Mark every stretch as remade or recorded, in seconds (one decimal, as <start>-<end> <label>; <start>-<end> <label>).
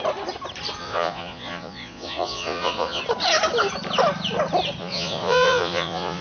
0.0-0.8 recorded; 0.8-3.0 remade; 3.0-4.8 recorded; 4.8-6.2 remade